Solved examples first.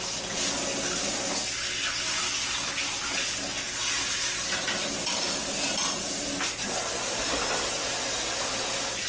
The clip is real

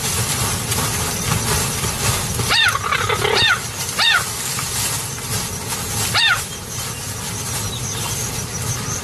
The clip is fake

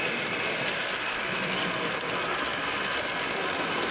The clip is real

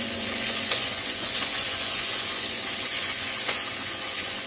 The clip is fake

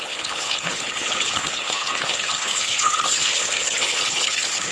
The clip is fake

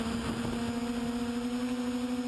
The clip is real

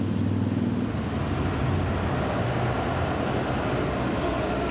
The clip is real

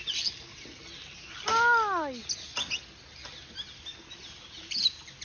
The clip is real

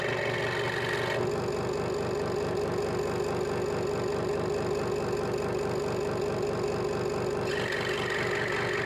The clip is real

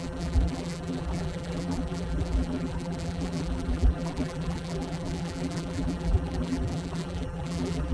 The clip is fake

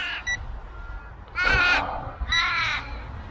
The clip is real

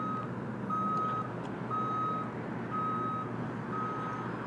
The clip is real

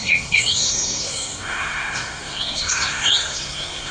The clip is fake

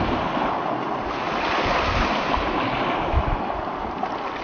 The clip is real